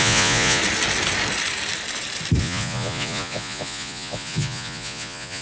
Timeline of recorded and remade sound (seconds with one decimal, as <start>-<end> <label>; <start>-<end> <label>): 0.0-0.6 remade; 0.6-2.4 recorded; 2.4-5.4 remade